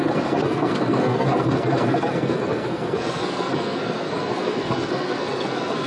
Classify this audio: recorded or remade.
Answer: remade